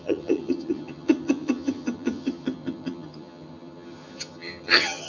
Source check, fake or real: fake